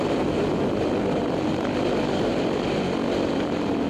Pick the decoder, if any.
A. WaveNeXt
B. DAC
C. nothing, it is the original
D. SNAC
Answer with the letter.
C